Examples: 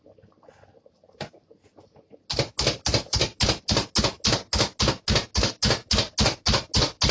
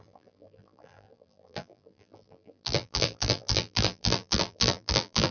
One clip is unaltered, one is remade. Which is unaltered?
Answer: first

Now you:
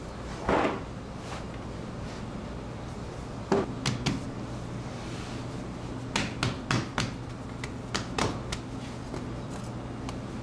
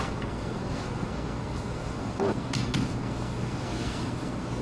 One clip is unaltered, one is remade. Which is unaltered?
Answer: first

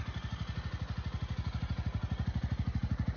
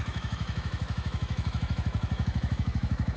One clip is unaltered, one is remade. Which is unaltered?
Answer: first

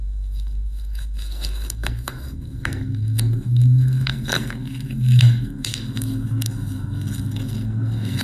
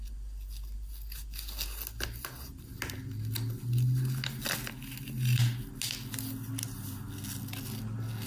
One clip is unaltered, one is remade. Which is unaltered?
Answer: second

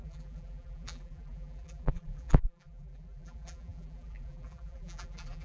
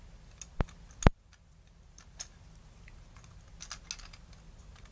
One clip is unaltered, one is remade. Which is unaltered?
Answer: second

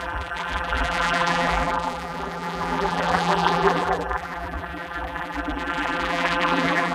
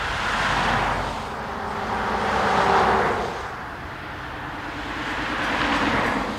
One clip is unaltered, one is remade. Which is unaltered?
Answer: second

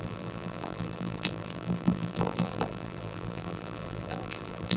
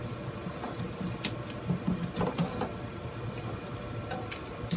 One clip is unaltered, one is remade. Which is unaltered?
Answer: second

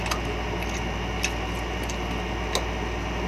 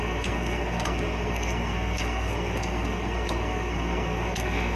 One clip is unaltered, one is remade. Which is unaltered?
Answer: first